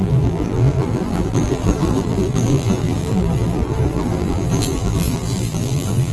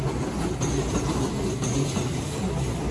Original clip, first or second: second